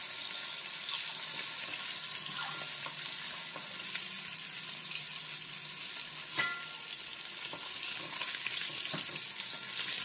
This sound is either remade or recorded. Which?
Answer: recorded